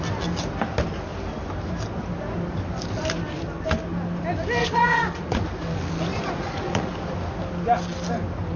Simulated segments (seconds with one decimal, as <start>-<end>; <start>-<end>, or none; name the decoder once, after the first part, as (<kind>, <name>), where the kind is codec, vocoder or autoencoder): 4.6-5.4 (vocoder, Vocos); 6.1-6.9